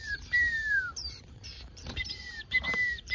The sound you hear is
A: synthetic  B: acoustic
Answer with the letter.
A